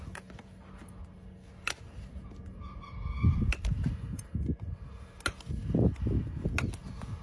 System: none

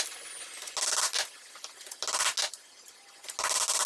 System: none